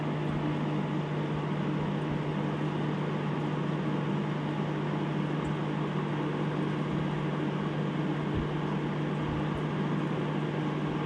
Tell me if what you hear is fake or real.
real